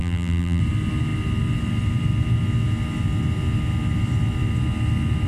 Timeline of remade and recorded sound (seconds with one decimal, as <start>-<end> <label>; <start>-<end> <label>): 0.0-0.6 remade; 0.6-5.3 recorded